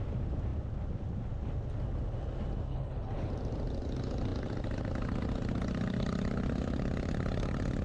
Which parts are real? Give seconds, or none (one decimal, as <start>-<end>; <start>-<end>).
0.0-2.7; 3.3-7.8